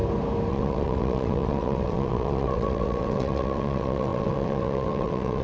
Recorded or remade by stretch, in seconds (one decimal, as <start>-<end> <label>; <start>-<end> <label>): 0.0-0.5 recorded; 0.5-5.4 remade